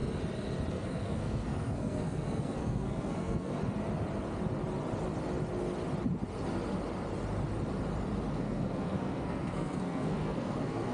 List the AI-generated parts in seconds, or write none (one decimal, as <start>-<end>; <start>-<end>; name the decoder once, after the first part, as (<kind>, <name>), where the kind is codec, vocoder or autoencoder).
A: 0.7-3.6 (codec, SNAC); 8.3-10.9